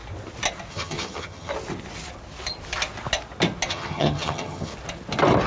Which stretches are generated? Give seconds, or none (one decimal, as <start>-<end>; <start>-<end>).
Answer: 0.7-1.5; 3.7-4.7